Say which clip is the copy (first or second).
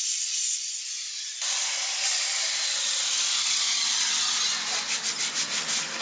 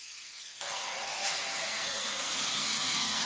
second